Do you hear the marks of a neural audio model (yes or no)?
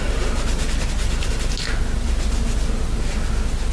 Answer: no